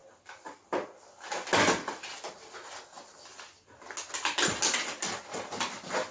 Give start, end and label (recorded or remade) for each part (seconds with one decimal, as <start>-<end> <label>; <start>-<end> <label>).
0.0-6.1 recorded